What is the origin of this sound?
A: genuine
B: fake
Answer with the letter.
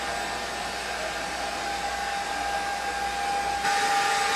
A